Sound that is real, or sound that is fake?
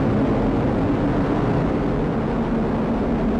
real